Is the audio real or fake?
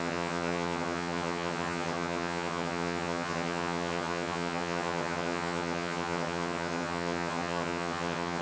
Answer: fake